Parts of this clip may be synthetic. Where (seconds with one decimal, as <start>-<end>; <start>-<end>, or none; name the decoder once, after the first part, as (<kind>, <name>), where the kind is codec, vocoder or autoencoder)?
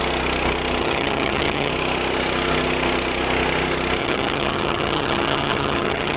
0.8-1.7 (vocoder, HiFi-GAN); 4.0-6.2